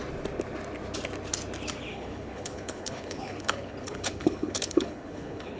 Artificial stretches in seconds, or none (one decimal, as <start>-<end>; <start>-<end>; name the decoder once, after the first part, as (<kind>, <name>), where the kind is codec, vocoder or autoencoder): 1.9-5.6 (codec, HILCodec)